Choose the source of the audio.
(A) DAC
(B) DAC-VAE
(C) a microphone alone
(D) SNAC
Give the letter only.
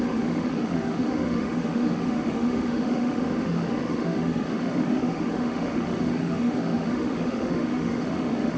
B